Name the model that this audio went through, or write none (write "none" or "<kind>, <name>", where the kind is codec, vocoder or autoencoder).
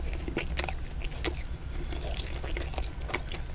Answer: none